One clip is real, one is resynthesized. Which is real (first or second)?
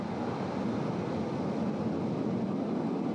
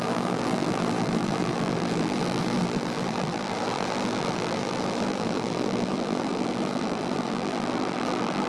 first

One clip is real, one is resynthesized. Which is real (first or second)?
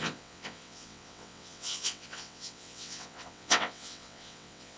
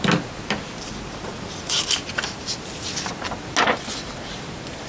second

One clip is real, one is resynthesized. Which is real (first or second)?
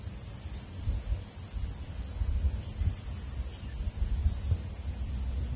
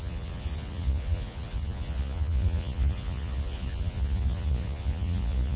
first